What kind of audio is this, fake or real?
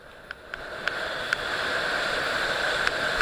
real